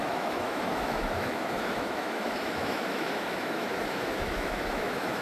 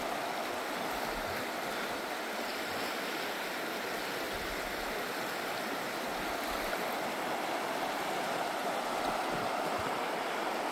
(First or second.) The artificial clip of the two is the first